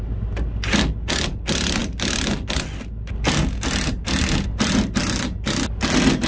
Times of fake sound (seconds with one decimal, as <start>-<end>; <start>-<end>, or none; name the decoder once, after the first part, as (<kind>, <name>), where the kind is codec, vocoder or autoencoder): none